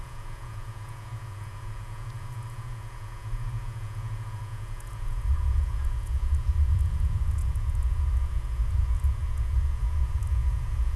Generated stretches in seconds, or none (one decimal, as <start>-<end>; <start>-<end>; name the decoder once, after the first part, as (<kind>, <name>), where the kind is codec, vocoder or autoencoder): 0.0-11.0 (vocoder, Vocos)